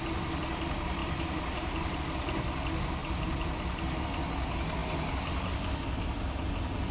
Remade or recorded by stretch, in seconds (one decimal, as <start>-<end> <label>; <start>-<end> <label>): 0.0-1.0 recorded; 1.0-2.0 remade; 2.0-3.0 recorded; 3.0-4.0 remade; 4.0-6.9 recorded